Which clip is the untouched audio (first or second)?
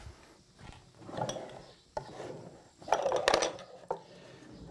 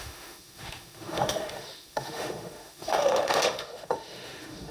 first